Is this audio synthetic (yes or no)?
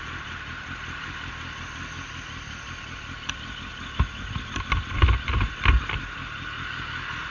no